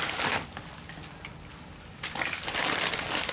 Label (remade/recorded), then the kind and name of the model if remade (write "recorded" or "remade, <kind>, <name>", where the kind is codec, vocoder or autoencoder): recorded